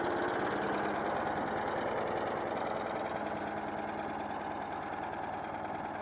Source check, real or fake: real